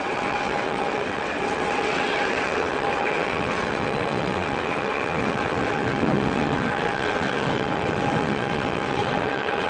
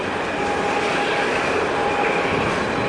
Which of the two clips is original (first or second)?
second